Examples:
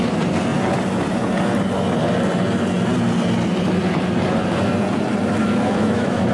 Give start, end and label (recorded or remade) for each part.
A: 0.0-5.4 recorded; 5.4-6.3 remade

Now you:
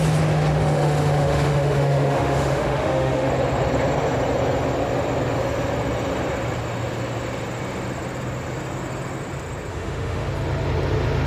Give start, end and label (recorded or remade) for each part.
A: 0.0-0.6 recorded; 0.6-3.3 remade; 3.3-9.7 recorded; 9.7-10.3 remade; 10.3-11.3 recorded

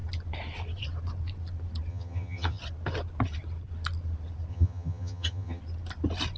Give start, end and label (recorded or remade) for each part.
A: 0.0-1.9 recorded; 1.9-2.6 remade; 2.6-4.5 recorded; 4.5-5.6 remade; 5.6-6.4 recorded

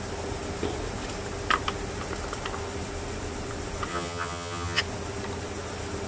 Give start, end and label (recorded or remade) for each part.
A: 0.0-3.9 recorded; 3.9-4.8 remade; 4.8-6.1 recorded